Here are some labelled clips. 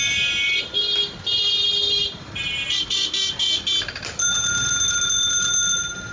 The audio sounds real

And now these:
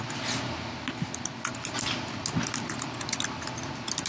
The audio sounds real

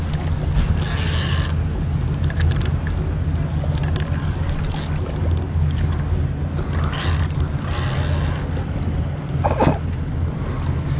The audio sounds real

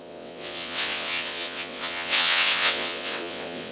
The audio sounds fake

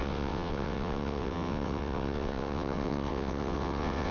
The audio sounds fake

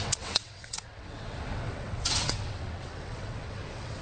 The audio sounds fake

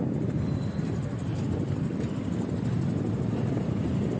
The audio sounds real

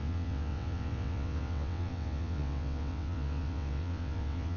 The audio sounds fake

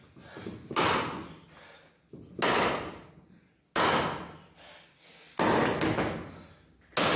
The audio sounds real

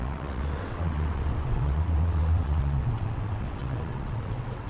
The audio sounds fake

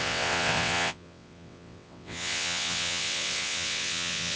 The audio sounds fake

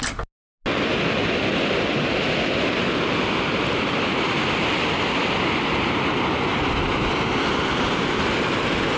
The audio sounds real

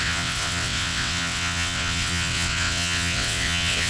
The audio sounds fake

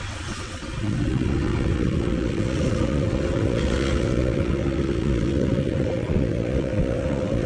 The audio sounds fake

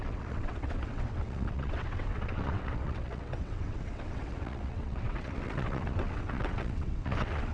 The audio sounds fake